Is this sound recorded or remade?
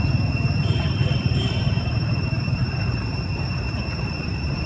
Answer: remade